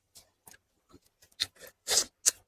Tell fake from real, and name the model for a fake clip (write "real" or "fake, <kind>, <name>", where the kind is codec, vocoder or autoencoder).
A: real